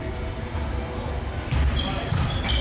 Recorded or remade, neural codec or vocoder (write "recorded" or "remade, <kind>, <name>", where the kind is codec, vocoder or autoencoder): recorded